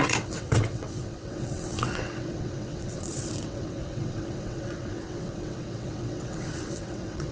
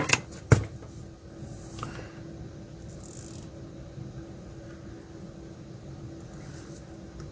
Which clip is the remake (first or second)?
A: first